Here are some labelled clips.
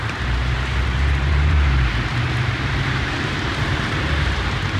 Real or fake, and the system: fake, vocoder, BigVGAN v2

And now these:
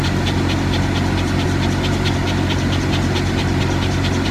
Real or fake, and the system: real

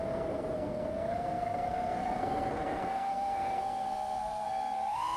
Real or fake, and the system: fake, codec, SNAC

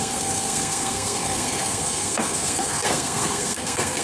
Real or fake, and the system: fake, codec, SNAC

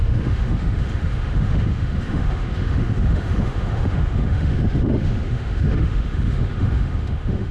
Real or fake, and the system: fake, autoencoder, DAC-VAE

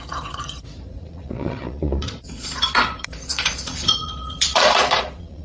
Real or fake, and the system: fake, vocoder, Vocos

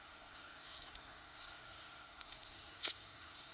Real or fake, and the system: fake, codec, SNAC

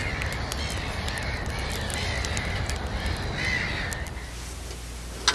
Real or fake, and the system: real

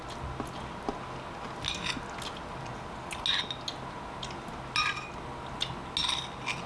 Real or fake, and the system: real